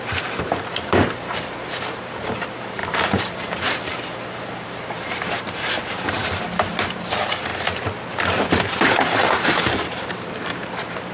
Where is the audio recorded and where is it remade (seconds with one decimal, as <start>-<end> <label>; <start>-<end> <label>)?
0.0-7.5 remade; 7.5-8.1 recorded; 8.1-11.1 remade